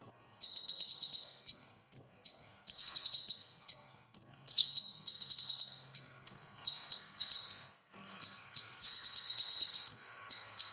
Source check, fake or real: fake